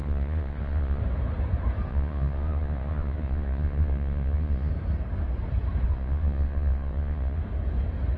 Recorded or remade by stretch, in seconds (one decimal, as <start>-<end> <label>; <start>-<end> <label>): 0.0-1.0 remade; 1.0-1.9 recorded; 1.9-4.7 remade; 4.7-5.9 recorded; 5.9-7.4 remade; 7.4-8.2 recorded